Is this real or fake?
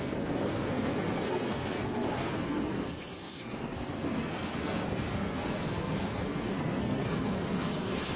fake